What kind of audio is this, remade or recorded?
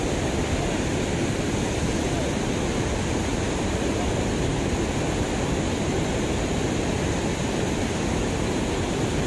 recorded